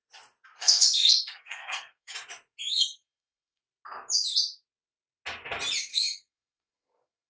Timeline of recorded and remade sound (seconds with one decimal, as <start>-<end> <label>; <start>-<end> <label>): 0.0-0.6 recorded; 0.6-2.1 remade; 2.1-2.7 recorded; 2.7-3.6 remade; 3.6-5.9 recorded; 5.9-7.3 remade